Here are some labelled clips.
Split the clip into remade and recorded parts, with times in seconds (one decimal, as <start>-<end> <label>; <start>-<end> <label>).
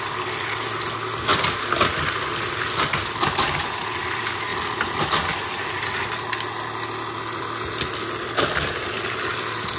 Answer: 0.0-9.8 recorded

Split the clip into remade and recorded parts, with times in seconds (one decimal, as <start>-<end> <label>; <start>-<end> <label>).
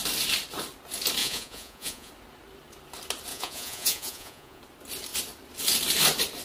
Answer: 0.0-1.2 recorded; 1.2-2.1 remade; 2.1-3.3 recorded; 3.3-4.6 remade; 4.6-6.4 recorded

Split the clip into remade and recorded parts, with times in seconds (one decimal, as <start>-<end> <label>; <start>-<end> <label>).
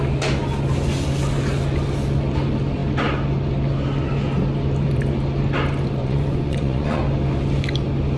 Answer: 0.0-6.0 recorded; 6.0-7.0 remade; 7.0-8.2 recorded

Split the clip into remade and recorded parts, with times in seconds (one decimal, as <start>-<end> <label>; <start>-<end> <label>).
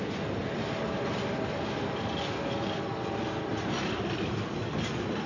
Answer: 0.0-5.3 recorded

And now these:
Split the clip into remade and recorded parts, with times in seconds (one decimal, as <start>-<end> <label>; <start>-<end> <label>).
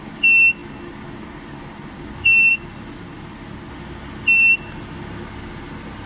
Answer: 0.0-6.1 recorded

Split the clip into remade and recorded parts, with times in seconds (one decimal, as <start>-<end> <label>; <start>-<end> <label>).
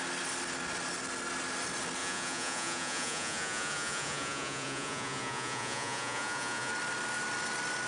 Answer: 0.0-2.0 recorded; 2.0-6.7 remade; 6.7-7.9 recorded